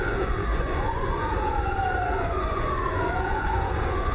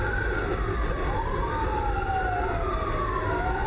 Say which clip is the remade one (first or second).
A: first